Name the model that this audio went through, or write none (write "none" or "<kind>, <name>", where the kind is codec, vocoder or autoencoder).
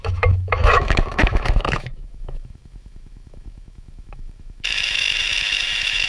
autoencoder, DAC-VAE